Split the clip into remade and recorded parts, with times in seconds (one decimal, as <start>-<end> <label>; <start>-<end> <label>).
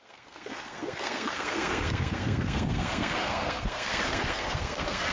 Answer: 0.0-5.1 remade